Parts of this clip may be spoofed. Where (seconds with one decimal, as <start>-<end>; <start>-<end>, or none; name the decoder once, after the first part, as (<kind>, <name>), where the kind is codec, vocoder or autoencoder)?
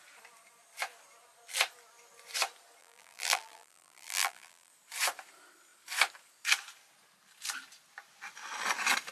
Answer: 2.8-4.7 (vocoder, BigVGAN v2)